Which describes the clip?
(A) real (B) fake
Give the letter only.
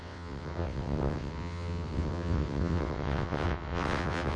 B